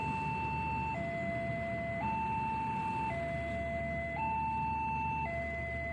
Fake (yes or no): no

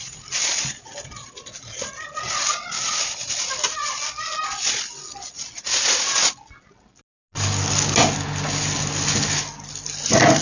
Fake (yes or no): no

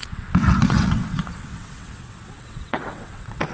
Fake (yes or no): yes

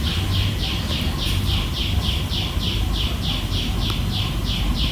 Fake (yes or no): no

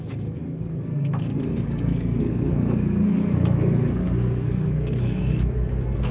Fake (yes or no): yes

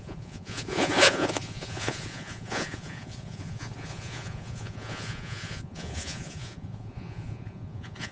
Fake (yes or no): yes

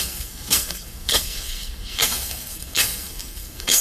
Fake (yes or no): yes